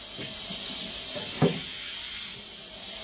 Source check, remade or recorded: recorded